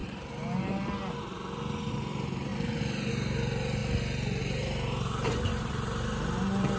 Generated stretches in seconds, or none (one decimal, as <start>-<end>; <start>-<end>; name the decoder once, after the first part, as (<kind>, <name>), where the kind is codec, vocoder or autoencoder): 1.9-2.5 (vocoder, BigVGAN v2); 3.1-3.8; 4.4-6.8